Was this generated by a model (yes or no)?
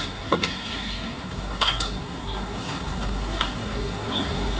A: yes